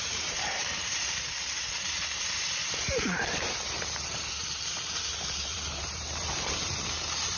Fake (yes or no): yes